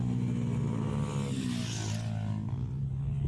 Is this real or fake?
real